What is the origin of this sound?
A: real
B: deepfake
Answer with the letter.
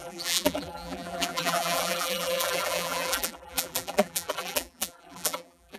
B